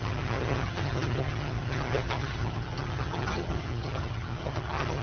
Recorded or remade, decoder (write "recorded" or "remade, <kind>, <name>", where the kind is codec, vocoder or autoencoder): remade, vocoder, HiFi-GAN